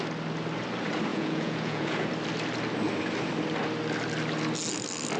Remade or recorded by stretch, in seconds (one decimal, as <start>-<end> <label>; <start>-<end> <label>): 0.0-1.1 recorded; 1.1-2.1 remade; 2.1-5.2 recorded